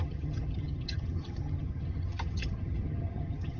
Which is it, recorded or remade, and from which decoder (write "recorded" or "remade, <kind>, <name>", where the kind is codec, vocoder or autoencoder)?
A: remade, vocoder, HiFi-GAN